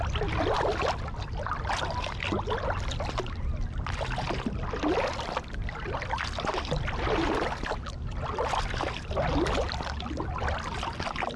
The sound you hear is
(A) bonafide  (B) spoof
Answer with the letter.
A